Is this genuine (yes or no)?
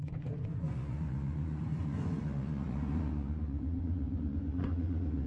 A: no